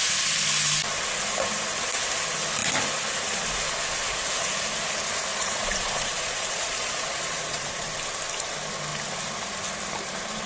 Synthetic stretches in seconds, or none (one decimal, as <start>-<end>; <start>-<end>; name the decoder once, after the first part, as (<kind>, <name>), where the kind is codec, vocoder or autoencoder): 5.3-7.9 (vocoder, Vocos)